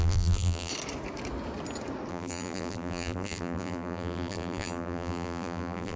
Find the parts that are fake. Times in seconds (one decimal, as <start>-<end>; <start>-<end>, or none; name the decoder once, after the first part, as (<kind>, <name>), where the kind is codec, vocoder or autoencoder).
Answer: 0.0-0.7 (vocoder, BigVGAN v2); 2.1-6.0